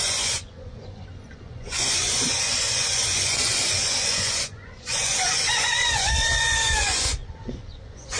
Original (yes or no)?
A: no